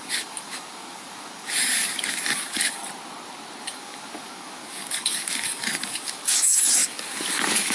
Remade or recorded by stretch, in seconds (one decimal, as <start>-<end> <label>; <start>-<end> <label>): 0.0-2.8 remade; 2.8-3.6 recorded; 3.6-7.7 remade